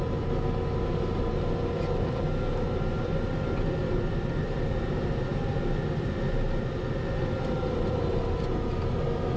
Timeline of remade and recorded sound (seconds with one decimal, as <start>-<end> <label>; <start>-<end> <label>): 0.0-3.8 recorded; 3.8-4.7 remade; 4.7-9.4 recorded